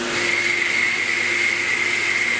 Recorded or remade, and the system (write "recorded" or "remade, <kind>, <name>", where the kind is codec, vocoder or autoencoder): recorded